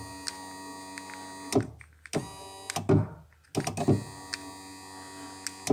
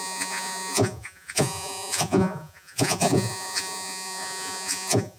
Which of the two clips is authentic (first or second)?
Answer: first